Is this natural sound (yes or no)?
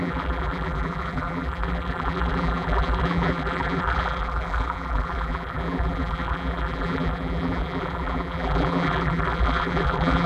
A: no